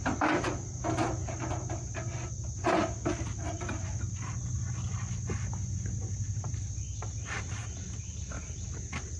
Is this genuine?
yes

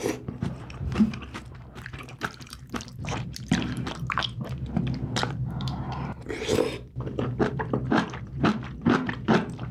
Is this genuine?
no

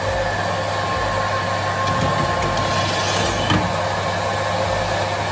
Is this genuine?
yes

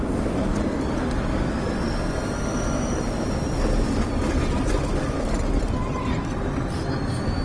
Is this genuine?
yes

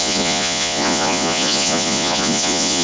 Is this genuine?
no